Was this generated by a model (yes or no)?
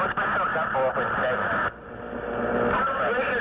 no